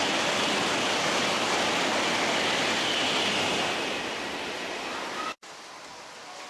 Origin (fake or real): real